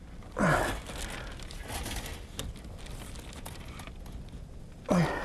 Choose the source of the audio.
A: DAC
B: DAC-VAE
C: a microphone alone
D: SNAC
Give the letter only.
C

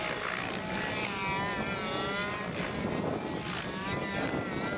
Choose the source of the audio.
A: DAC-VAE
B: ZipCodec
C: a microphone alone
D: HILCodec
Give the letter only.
C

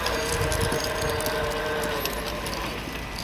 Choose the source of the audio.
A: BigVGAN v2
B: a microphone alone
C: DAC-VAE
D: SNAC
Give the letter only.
B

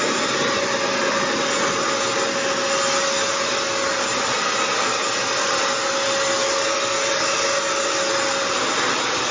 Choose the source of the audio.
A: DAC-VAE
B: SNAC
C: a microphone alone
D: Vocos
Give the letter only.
C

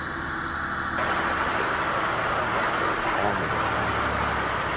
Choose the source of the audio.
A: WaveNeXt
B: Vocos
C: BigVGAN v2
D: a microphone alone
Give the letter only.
D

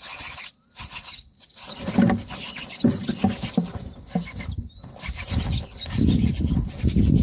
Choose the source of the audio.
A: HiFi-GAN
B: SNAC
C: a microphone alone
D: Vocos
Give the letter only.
C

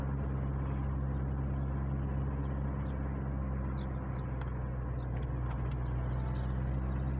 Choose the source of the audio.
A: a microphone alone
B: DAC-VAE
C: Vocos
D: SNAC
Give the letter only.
A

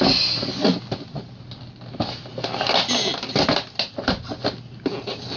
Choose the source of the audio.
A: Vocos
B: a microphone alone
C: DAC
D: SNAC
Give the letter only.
B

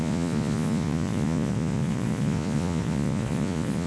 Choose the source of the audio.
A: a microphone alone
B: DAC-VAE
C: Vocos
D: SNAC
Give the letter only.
C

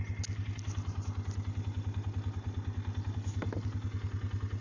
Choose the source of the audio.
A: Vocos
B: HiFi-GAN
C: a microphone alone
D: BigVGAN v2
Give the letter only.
C